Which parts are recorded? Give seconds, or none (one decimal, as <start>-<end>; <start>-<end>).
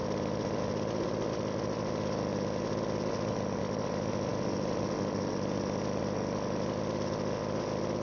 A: 0.0-8.0